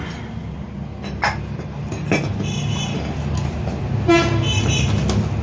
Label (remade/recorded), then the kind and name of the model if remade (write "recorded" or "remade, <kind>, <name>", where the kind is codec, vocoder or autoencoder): recorded